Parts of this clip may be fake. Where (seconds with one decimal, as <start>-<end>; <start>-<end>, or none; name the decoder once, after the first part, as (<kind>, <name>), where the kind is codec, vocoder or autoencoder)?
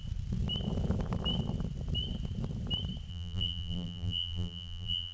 3.1-5.1 (vocoder, BigVGAN v2)